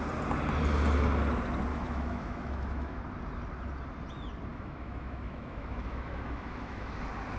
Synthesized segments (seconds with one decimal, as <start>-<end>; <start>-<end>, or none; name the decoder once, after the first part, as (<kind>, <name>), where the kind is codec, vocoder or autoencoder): 1.7-3.0 (autoencoder, DAC-VAE); 4.5-6.9